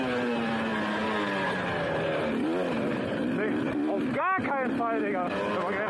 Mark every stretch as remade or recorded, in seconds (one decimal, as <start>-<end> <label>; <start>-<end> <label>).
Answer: 0.0-5.9 recorded